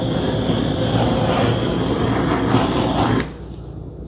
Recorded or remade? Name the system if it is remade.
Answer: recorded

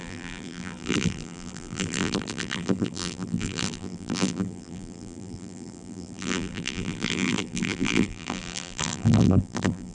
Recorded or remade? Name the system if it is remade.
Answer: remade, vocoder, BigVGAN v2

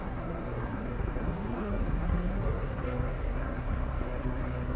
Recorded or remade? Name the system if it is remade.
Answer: remade, codec, SNAC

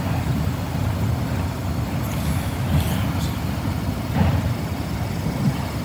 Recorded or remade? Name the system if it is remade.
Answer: recorded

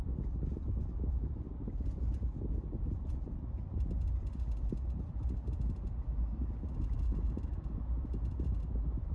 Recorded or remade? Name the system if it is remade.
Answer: recorded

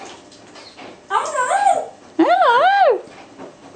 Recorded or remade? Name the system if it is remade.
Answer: recorded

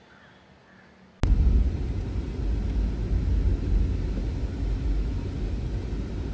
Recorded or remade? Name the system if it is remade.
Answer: recorded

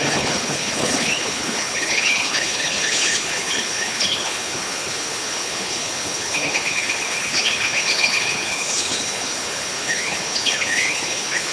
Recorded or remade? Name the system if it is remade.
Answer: remade, codec, HILCodec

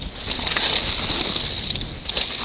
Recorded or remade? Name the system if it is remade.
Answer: recorded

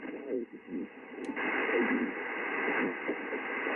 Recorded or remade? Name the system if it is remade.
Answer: recorded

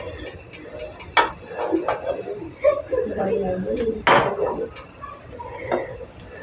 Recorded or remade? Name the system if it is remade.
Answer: recorded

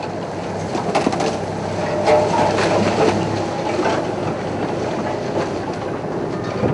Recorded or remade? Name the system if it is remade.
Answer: recorded